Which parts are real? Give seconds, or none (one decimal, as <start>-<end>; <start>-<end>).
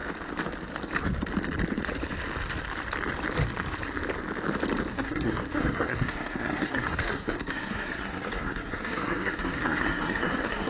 0.0-4.9